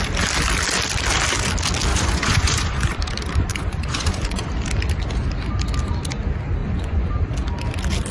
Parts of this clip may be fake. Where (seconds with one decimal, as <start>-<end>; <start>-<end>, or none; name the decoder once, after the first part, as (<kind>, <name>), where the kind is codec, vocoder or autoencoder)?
1.9-3.0 (vocoder, Vocos); 3.5-4.5; 6.6-7.1